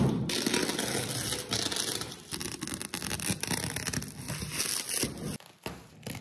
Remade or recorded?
recorded